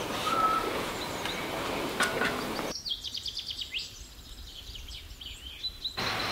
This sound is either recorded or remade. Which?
recorded